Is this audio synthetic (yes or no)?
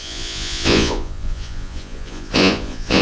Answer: yes